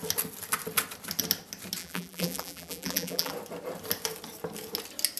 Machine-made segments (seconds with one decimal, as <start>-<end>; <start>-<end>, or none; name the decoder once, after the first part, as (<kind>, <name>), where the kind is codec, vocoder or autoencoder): 1.8-3.3 (vocoder, BigVGAN v2)